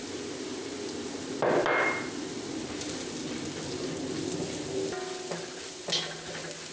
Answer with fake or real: real